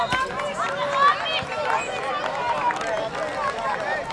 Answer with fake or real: real